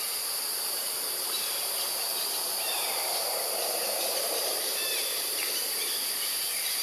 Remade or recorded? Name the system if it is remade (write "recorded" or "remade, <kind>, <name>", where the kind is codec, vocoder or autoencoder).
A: remade, vocoder, BigVGAN v2